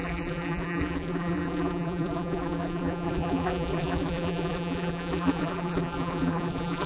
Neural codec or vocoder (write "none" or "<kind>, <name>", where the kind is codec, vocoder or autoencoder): vocoder, BigVGAN v2